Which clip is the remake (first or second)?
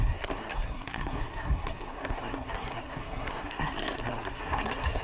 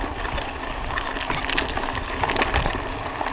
first